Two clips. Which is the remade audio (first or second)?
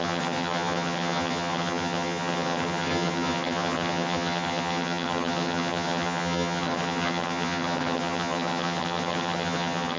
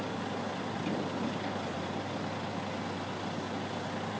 first